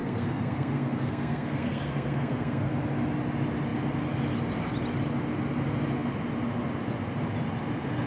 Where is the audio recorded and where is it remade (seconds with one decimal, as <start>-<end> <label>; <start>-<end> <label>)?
0.0-2.7 remade; 2.7-8.1 recorded